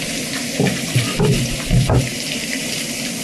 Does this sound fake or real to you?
fake